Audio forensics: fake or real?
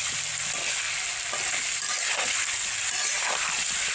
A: real